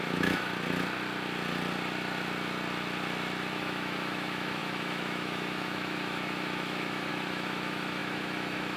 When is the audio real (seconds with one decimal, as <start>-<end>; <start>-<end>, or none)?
0.5-3.5